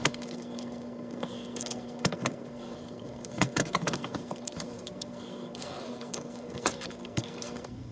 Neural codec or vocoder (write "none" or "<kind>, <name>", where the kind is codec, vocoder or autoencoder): codec, SNAC